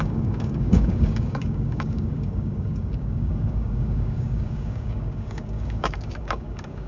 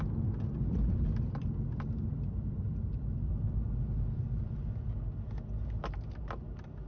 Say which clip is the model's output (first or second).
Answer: first